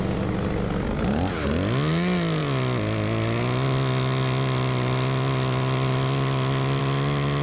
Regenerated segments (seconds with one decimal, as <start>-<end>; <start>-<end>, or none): none